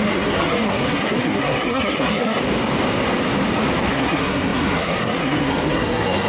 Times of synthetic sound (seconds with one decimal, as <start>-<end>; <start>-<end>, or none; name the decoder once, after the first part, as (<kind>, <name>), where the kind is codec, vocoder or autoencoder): 0.0-2.4 (codec, SNAC); 3.9-6.3